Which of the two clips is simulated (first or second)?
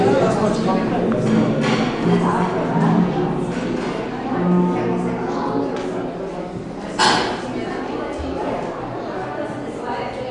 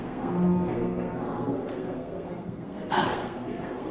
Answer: second